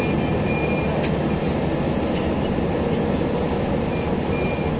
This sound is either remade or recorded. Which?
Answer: recorded